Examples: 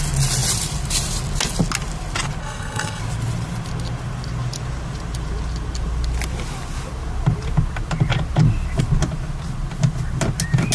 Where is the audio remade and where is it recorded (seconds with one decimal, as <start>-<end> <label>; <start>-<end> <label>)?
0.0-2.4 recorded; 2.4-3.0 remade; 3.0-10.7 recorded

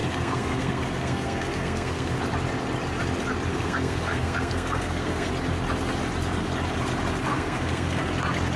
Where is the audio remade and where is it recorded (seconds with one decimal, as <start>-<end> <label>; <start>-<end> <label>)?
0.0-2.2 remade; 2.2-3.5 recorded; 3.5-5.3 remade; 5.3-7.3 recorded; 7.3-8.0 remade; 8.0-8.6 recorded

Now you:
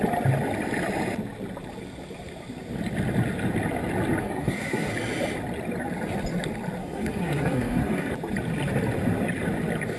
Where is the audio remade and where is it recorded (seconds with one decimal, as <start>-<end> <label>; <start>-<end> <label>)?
0.0-4.2 recorded; 4.2-4.9 remade; 4.9-6.8 recorded; 6.8-8.1 remade; 8.1-10.0 recorded

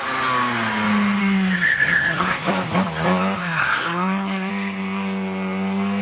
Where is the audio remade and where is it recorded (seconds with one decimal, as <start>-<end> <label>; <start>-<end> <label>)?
0.0-1.2 recorded; 1.2-2.5 remade; 2.5-3.4 recorded; 3.4-4.5 remade; 4.5-6.0 recorded

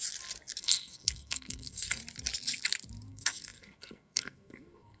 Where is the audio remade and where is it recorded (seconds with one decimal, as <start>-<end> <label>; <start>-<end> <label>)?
0.0-0.6 recorded; 0.6-2.0 remade; 2.0-3.1 recorded; 3.1-5.0 remade

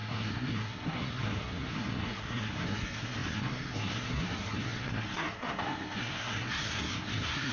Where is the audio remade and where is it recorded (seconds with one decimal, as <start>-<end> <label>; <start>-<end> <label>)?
0.0-7.5 remade

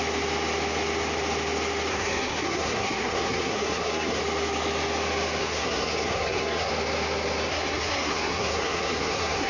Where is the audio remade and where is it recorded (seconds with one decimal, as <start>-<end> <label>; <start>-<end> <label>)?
0.0-1.9 recorded; 1.9-4.2 remade; 4.2-5.4 recorded; 5.4-6.7 remade; 6.7-7.5 recorded; 7.5-9.5 remade